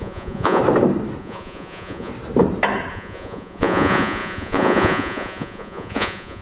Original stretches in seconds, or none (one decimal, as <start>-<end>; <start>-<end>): 0.6-1.2; 2.1-2.9